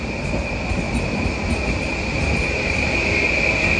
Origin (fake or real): real